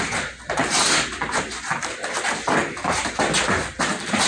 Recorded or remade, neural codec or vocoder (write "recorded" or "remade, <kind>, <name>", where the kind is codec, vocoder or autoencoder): recorded